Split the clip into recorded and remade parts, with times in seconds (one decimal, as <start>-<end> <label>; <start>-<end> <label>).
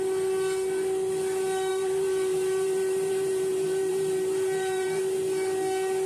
0.0-1.7 recorded; 1.7-5.0 remade; 5.0-6.1 recorded